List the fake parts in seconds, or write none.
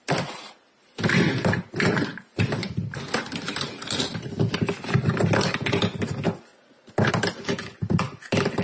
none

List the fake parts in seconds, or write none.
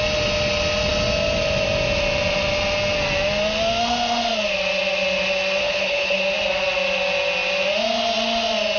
5.6-6.2 (codec, HILCodec)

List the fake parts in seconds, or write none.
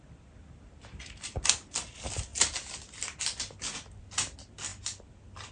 none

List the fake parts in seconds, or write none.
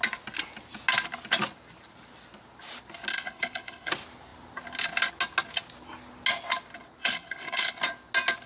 3.1-3.9 (codec, HILCodec); 7.0-7.8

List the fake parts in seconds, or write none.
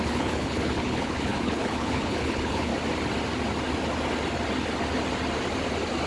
0.0-2.7 (codec, HILCodec)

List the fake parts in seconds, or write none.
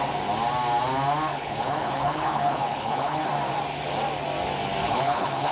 1.3-3.3 (codec, HILCodec); 4.8-5.5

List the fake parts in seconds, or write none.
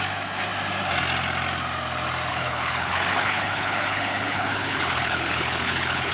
2.3-6.1 (codec, HILCodec)